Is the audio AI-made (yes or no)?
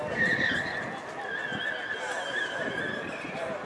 no